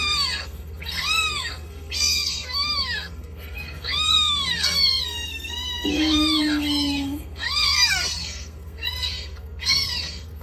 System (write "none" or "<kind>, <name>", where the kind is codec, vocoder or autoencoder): codec, SNAC